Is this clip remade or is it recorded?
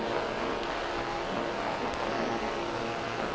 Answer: remade